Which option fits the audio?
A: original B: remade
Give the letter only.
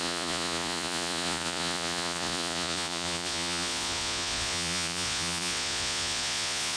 B